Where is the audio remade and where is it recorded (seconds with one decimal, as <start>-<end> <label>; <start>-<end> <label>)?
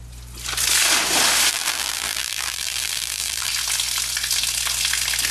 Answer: 0.0-1.5 recorded; 1.5-3.5 remade; 3.5-5.3 recorded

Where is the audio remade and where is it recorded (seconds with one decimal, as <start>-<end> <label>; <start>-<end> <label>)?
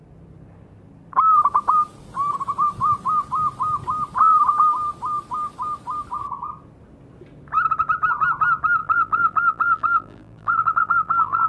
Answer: 0.0-8.8 recorded; 8.8-11.5 remade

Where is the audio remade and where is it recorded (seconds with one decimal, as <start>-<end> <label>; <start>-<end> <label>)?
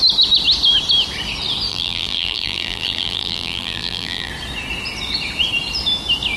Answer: 0.0-1.7 recorded; 1.7-4.3 remade; 4.3-6.4 recorded